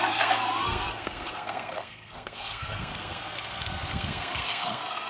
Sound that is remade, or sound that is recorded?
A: remade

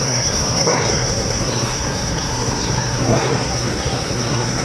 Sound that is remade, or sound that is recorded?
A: remade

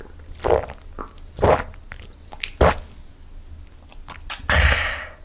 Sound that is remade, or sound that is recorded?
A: recorded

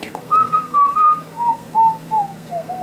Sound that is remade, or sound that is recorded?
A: remade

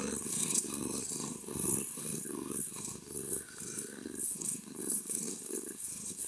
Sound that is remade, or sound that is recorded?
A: remade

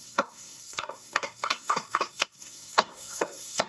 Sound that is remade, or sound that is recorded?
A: remade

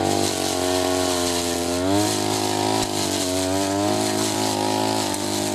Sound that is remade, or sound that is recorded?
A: recorded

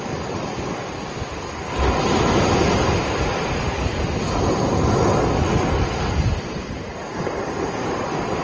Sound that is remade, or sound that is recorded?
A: recorded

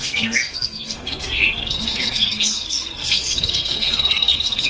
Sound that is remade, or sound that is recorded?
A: remade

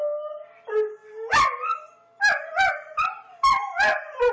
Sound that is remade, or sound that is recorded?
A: recorded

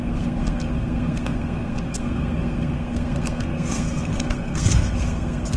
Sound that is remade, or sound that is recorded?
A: remade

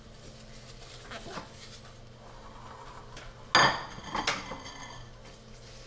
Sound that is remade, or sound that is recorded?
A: recorded